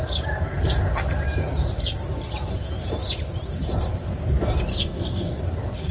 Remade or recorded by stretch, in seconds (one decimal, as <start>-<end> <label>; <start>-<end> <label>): 0.0-4.7 recorded; 4.7-5.4 remade; 5.4-5.9 recorded